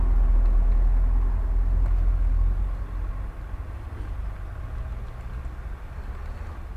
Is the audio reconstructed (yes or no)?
no